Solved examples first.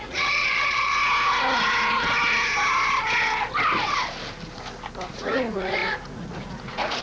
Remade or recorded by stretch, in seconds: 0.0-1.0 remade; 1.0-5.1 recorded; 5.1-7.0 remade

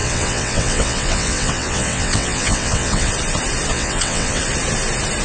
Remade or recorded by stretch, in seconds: 0.0-3.1 remade; 3.1-3.7 recorded; 3.7-4.4 remade; 4.4-5.2 recorded

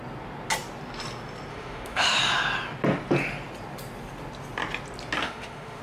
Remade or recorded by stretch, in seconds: 0.0-1.5 recorded; 1.5-2.2 remade; 2.2-5.2 recorded; 5.2-5.8 remade

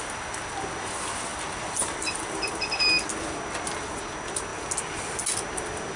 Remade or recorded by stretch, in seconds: 0.0-6.0 recorded

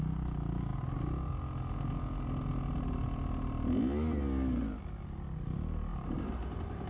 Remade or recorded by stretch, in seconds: 0.0-5.9 recorded; 5.9-6.9 remade